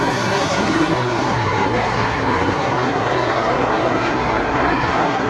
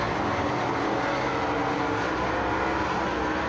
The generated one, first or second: first